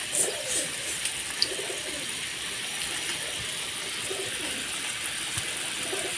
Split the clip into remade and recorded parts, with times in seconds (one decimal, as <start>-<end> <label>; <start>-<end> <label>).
0.0-1.1 remade; 1.1-6.2 recorded